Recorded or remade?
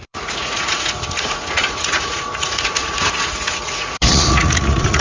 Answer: remade